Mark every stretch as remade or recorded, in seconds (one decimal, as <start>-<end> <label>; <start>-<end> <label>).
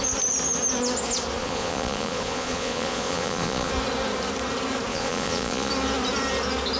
0.0-1.4 recorded; 1.4-3.7 remade; 3.7-4.9 recorded; 4.9-5.7 remade; 5.7-6.8 recorded